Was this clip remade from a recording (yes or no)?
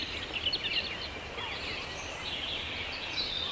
no